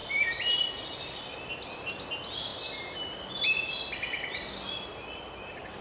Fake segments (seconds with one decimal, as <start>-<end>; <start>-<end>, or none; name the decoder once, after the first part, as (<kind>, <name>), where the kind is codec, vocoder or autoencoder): none